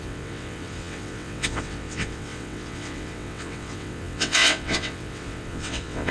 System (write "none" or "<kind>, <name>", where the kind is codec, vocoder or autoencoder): vocoder, WaveNeXt